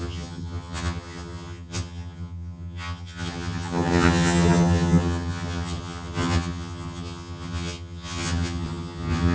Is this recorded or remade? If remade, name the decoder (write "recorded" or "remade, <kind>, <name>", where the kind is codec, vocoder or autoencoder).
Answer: remade, vocoder, HiFi-GAN